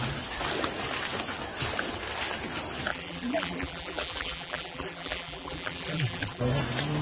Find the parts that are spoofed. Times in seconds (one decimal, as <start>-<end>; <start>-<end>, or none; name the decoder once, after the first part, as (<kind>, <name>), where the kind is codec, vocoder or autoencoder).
2.9-6.4 (vocoder, BigVGAN v2)